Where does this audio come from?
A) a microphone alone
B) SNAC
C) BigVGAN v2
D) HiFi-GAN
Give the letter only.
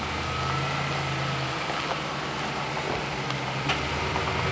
A